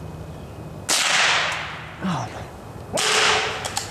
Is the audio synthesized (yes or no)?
no